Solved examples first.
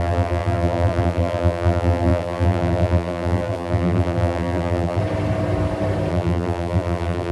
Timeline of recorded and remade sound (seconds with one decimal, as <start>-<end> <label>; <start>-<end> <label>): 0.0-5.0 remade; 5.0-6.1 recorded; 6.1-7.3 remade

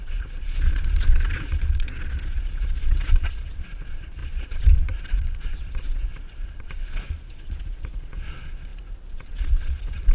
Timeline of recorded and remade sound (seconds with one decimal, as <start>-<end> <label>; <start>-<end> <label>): 0.0-10.1 remade

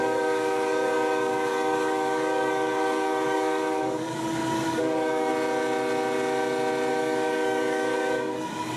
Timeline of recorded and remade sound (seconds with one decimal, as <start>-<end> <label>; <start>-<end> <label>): 0.0-5.3 remade; 5.3-6.9 recorded; 6.9-8.8 remade